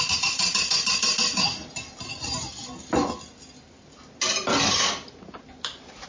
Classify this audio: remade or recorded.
recorded